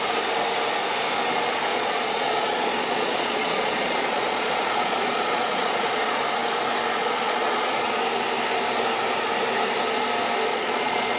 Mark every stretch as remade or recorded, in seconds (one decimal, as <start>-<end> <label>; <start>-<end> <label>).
0.0-1.7 recorded; 1.7-6.2 remade; 6.2-7.0 recorded; 7.0-8.0 remade; 8.0-10.5 recorded; 10.5-11.2 remade